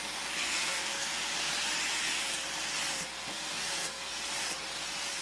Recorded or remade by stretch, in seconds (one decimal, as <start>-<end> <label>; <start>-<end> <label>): 0.0-0.4 recorded; 0.4-1.1 remade; 1.1-3.2 recorded; 3.2-4.1 remade; 4.1-5.2 recorded